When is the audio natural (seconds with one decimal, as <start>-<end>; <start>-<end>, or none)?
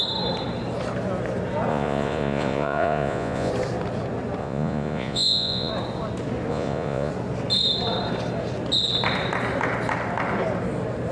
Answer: 0.0-1.7; 3.5-4.4; 5.7-6.5; 7.1-11.1